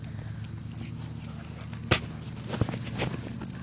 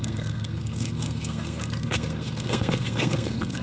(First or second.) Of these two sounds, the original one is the first